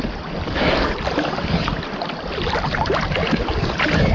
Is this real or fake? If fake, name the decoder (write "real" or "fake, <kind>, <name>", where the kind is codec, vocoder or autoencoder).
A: real